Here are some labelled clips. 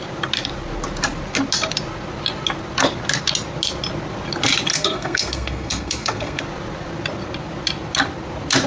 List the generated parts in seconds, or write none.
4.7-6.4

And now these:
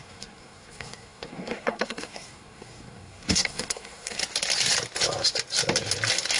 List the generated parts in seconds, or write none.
0.0-4.2

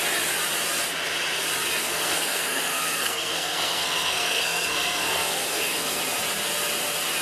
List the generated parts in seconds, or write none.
1.8-6.0

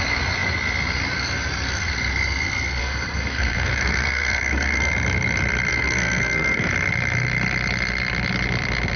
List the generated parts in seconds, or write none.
2.8-4.9; 5.7-6.7

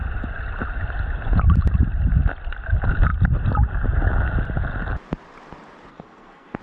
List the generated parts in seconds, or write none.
5.9-6.6